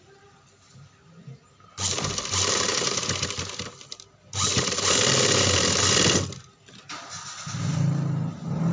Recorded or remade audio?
recorded